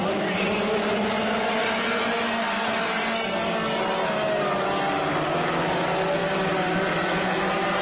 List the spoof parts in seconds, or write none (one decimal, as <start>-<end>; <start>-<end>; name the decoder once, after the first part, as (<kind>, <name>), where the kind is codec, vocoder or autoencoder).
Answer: none